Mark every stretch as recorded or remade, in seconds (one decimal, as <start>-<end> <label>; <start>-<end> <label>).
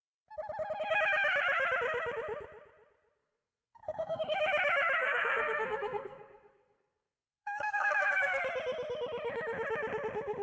0.0-3.2 recorded; 3.2-4.2 remade; 4.2-5.0 recorded; 5.0-8.4 remade; 8.4-10.4 recorded